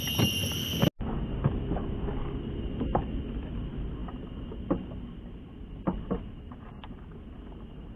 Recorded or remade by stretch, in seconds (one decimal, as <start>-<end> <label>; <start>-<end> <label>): 0.0-8.0 recorded